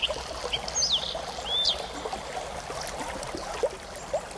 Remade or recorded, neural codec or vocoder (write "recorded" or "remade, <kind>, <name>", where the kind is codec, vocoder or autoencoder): recorded